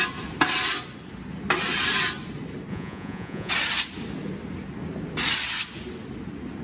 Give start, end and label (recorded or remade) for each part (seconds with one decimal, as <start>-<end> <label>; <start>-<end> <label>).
0.0-2.7 recorded; 2.7-3.5 remade; 3.5-6.6 recorded